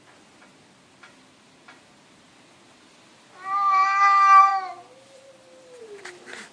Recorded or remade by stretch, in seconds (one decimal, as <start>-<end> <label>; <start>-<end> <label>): 0.0-6.5 recorded